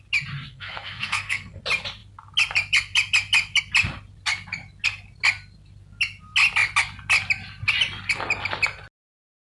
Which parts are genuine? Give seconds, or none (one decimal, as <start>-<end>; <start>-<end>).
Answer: 0.0-0.5; 1.6-9.5